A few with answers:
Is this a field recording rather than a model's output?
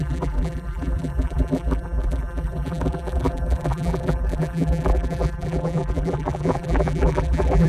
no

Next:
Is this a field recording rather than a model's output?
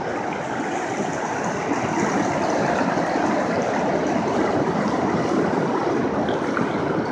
yes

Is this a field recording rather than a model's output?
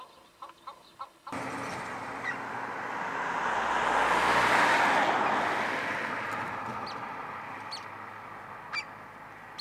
yes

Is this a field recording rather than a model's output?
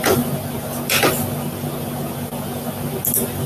yes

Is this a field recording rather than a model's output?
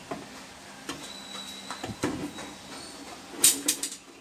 yes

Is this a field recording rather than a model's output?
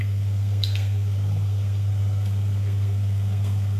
no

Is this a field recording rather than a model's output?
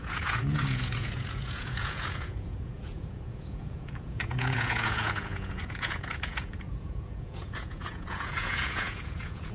no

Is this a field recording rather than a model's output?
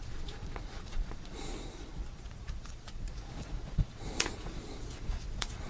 no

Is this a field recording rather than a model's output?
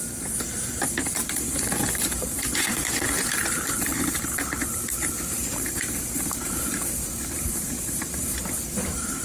no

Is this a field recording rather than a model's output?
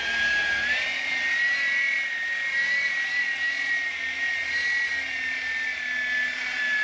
yes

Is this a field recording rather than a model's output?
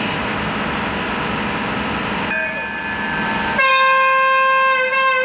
yes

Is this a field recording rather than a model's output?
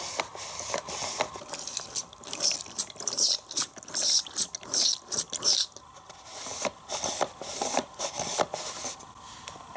yes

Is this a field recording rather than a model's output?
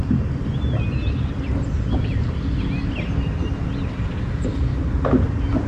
yes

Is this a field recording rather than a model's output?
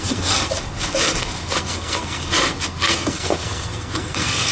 no